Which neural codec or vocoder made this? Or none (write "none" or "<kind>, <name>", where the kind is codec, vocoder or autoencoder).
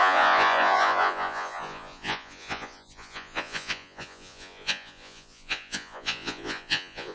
vocoder, Vocos